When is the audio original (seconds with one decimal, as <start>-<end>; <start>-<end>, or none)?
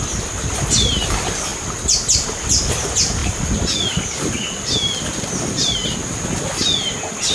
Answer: 0.0-7.3